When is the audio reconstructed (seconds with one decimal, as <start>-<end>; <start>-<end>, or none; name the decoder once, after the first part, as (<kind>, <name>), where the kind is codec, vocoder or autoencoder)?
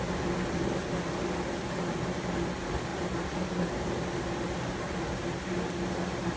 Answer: none